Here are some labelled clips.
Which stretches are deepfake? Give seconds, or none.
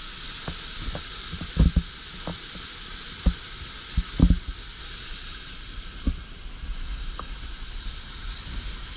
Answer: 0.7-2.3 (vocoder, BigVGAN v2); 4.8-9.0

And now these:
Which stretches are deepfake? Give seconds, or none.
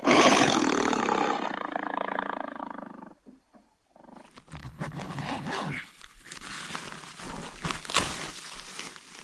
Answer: 0.0-1.0 (codec, HILCodec); 4.6-6.7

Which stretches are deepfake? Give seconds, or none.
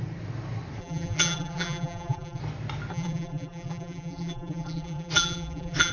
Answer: 0.8-2.4 (vocoder, BigVGAN v2); 2.9-5.9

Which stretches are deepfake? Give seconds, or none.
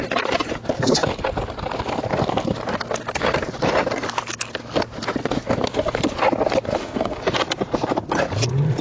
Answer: 6.7-7.2 (autoencoder, DAC-VAE)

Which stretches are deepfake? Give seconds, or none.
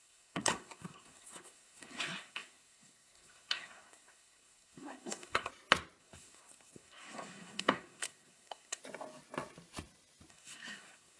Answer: 0.0-5.5 (codec, SNAC); 6.0-8.8; 10.3-11.2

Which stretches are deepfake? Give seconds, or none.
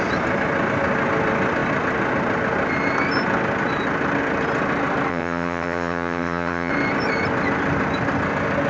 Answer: 5.1-6.7 (vocoder, HiFi-GAN)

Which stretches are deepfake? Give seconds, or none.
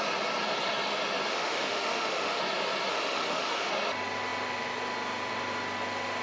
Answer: 1.3-2.4 (autoencoder, DAC-VAE); 2.9-3.7